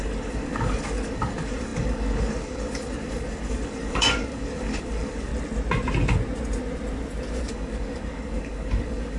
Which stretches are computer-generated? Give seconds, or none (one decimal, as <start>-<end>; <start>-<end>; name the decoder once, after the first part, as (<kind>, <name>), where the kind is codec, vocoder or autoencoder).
0.0-5.3 (codec, DAC); 7.5-9.2